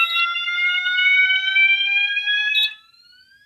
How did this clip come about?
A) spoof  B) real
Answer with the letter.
B